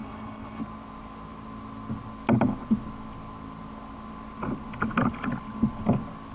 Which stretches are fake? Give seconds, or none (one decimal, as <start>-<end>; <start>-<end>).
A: 0.0-0.6